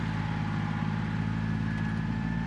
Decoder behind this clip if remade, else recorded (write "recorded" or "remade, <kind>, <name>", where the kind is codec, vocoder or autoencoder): remade, vocoder, BigVGAN v2